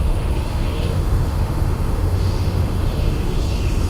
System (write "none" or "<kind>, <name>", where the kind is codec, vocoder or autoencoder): autoencoder, DAC-VAE